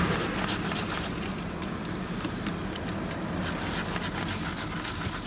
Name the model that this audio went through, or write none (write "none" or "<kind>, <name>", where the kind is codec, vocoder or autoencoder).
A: none